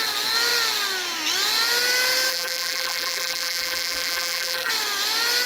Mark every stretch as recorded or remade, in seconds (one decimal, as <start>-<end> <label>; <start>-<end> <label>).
0.0-2.3 recorded; 2.3-4.7 remade; 4.7-5.5 recorded